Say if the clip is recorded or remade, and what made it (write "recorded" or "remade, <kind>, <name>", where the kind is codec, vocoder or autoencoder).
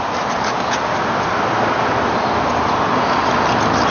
recorded